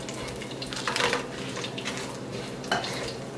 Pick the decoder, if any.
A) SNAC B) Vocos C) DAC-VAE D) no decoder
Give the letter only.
D